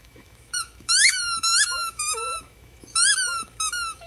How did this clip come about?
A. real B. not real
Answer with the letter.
B